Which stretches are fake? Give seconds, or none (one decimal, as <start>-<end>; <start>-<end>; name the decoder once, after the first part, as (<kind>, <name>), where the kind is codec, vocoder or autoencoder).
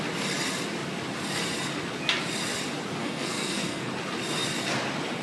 3.0-3.9 (codec, SNAC)